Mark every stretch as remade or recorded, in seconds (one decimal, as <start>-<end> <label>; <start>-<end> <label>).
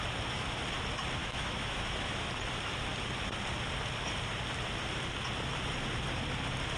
0.0-1.2 recorded; 1.2-2.3 remade; 2.3-6.8 recorded